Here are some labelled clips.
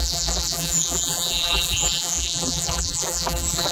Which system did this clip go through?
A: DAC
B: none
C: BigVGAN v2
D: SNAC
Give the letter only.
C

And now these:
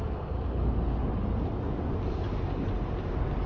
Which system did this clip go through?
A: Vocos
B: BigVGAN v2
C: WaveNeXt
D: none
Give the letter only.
D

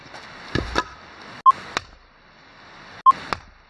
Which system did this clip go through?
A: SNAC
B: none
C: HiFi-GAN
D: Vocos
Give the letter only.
B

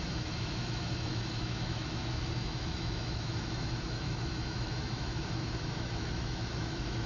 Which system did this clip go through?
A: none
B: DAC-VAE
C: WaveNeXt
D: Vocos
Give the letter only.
B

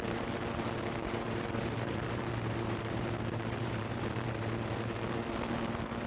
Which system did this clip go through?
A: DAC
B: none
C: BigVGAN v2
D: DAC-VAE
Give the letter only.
C